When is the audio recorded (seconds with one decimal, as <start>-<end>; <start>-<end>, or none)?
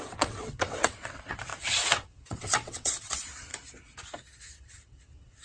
3.5-4.4